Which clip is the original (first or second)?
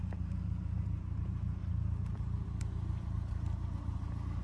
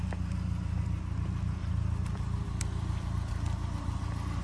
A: second